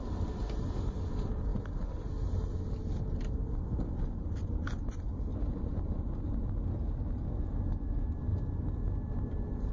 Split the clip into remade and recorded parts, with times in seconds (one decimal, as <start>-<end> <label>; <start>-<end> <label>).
0.0-5.3 recorded; 5.3-6.3 remade; 6.3-9.7 recorded